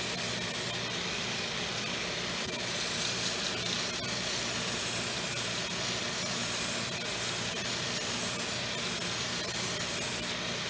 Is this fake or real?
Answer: real